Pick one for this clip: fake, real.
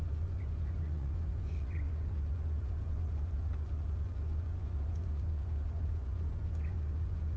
fake